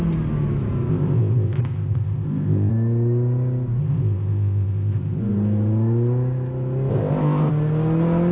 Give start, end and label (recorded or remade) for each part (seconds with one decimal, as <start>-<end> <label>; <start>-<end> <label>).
0.0-0.9 recorded; 0.9-2.7 remade; 2.7-3.8 recorded; 3.8-5.2 remade; 5.2-6.9 recorded; 6.9-7.5 remade; 7.5-8.3 recorded